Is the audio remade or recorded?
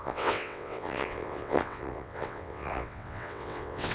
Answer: remade